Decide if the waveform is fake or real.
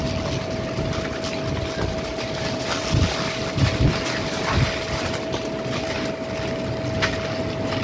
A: real